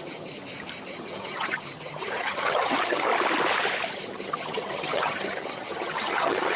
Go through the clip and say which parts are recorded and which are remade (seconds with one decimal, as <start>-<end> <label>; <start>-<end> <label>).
0.0-0.4 remade; 0.4-0.9 recorded; 0.9-3.1 remade; 3.1-3.9 recorded; 3.9-6.6 remade